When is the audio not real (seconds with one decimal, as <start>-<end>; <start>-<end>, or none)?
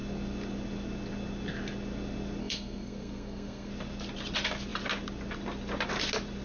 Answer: 2.4-3.7